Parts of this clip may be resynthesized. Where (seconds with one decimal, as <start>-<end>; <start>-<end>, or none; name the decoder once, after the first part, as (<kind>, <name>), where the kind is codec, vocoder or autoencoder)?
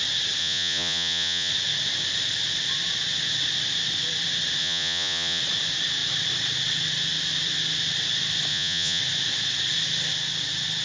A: 0.4-1.5 (vocoder, Vocos); 4.6-5.4; 8.5-9.0